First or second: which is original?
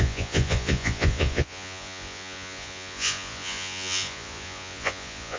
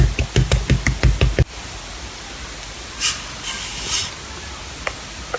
second